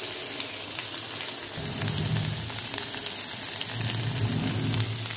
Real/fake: real